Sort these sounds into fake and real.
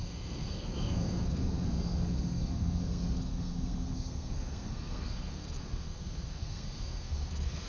fake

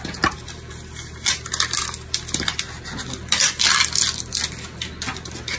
real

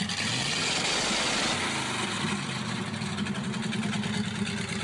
real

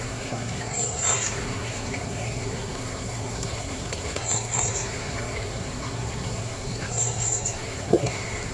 fake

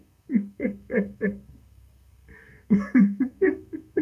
fake